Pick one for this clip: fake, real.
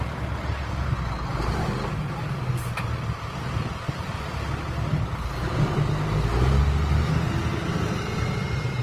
real